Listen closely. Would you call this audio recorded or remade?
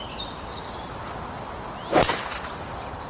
recorded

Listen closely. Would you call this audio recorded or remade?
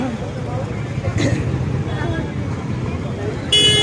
recorded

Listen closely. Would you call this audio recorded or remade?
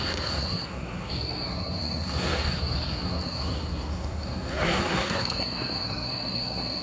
remade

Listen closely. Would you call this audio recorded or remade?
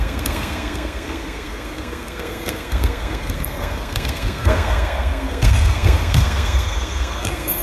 remade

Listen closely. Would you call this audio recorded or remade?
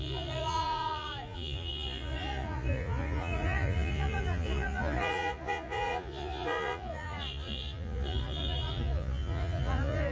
remade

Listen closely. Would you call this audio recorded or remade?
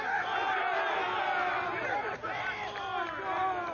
recorded